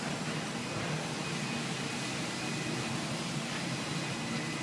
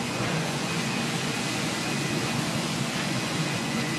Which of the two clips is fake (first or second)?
second